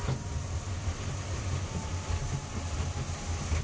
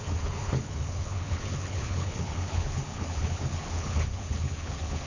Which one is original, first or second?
first